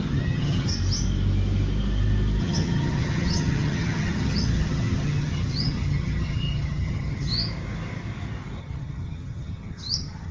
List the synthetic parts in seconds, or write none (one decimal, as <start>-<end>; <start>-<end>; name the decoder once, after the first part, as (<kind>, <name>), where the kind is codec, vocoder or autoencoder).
0.0-0.7 (vocoder, HiFi-GAN); 2.4-7.3; 8.6-10.3